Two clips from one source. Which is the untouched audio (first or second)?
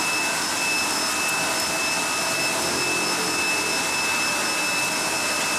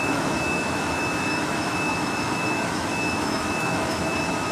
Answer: first